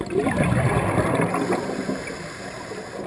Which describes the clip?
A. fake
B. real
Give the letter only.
B